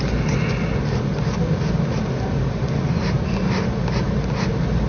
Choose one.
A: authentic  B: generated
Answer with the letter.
A